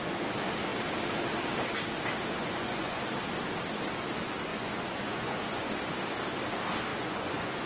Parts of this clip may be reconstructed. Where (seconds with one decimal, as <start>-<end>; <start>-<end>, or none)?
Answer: 2.4-3.0; 4.5-5.7; 6.9-7.7